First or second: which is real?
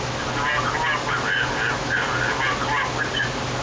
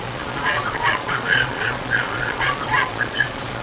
first